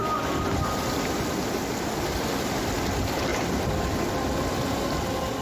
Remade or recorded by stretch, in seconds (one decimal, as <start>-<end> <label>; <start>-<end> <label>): 0.0-5.4 recorded